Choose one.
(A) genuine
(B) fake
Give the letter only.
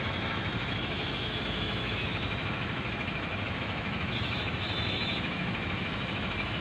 B